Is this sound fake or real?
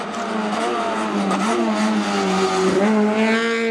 real